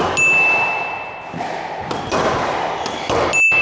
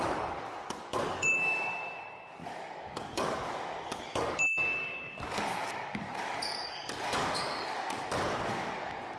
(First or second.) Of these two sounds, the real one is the first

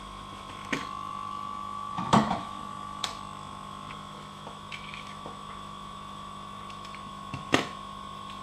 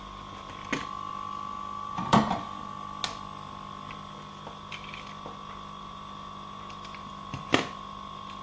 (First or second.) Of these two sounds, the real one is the second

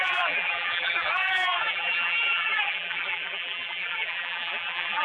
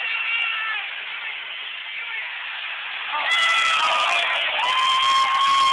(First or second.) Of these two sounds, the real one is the second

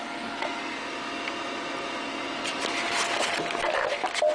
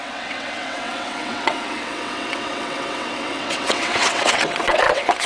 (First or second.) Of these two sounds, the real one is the first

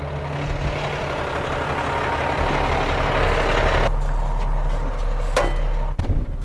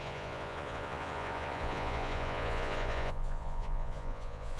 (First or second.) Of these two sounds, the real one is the first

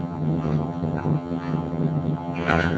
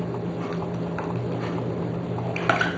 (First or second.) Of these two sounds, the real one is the second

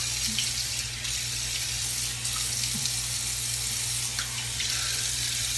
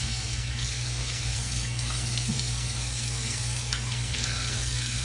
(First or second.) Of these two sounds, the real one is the first